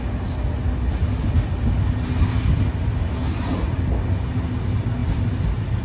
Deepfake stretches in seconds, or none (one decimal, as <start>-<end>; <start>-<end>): 5.0-5.8